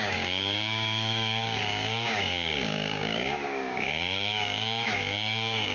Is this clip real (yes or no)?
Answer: no